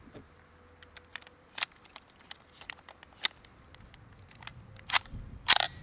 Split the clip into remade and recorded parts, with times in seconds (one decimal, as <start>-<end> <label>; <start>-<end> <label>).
0.0-1.1 recorded; 1.1-3.0 remade; 3.0-4.5 recorded; 4.5-5.8 remade